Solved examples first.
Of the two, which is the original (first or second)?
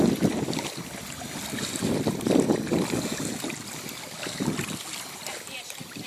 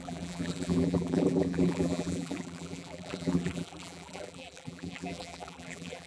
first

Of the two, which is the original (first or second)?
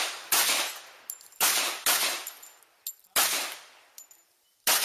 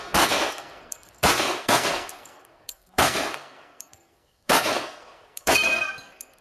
first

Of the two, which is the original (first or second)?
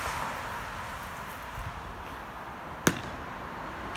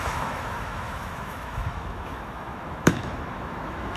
first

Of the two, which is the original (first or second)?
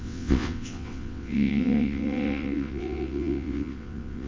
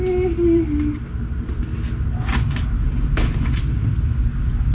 second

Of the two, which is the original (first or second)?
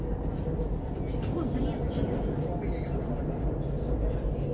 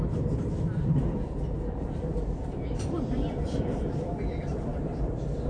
first